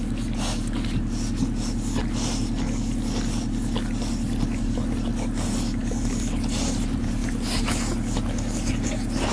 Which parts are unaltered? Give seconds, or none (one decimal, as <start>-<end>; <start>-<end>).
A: 0.0-9.3